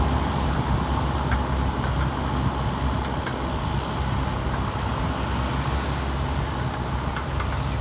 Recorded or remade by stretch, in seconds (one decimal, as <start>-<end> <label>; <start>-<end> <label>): 0.0-7.8 recorded